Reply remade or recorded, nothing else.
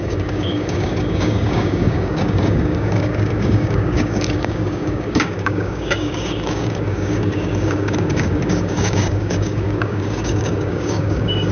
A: remade